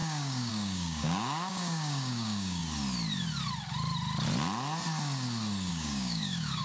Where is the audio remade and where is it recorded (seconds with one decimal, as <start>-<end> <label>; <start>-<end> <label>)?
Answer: 0.0-2.6 remade; 2.6-5.7 recorded; 5.7-6.6 remade